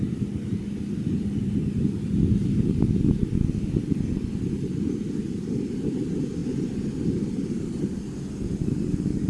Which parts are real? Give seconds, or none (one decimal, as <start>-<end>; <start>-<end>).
0.0-9.3